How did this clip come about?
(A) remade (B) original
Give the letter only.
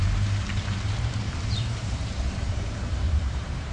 A